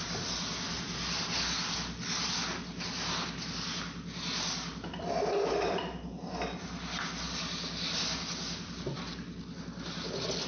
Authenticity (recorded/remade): recorded